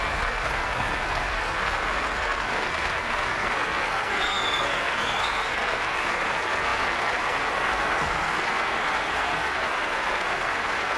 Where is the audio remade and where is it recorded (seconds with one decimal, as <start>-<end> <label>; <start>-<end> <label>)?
0.0-11.0 remade